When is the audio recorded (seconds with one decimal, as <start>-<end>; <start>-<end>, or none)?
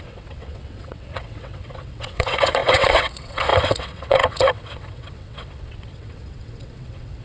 none